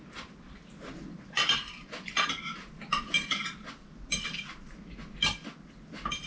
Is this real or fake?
real